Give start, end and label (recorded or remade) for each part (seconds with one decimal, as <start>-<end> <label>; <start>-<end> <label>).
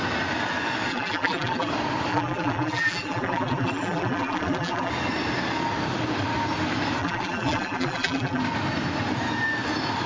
0.0-0.9 recorded; 0.9-1.7 remade; 1.7-2.1 recorded; 2.1-4.9 remade; 4.9-7.0 recorded; 7.0-8.4 remade; 8.4-10.1 recorded